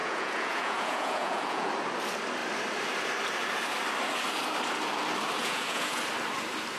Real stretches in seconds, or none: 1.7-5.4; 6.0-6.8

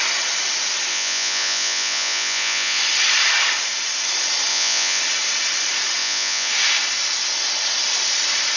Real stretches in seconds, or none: 0.0-0.9; 2.8-4.5; 5.0-6.0; 6.5-8.6

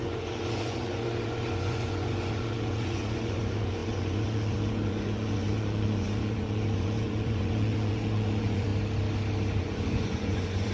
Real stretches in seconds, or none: 8.7-9.6

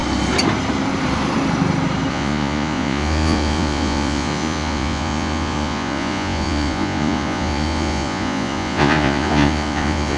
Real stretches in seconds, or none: 0.0-2.1